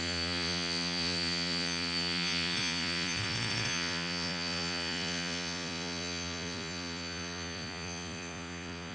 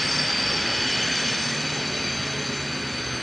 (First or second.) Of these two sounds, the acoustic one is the second